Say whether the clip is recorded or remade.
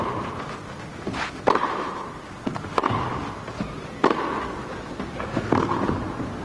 recorded